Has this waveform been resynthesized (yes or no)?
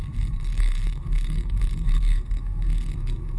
yes